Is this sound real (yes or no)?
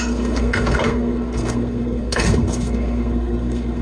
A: no